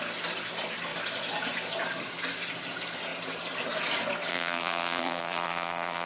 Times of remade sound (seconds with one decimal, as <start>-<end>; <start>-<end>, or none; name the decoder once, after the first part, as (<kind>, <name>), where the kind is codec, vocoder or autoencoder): 4.3-6.1 (vocoder, BigVGAN v2)